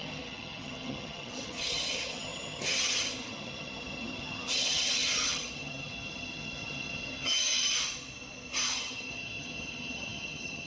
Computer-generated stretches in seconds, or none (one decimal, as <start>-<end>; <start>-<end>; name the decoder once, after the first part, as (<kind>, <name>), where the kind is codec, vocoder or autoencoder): 0.0-7.5 (vocoder, HiFi-GAN); 8.7-10.7